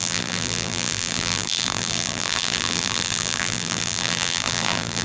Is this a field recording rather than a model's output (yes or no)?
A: no